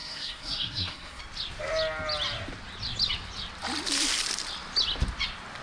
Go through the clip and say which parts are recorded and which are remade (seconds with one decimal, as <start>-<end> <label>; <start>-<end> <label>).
0.0-1.2 remade; 1.2-5.6 recorded